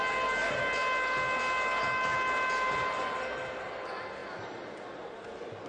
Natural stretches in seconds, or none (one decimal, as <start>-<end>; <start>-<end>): 0.0-5.7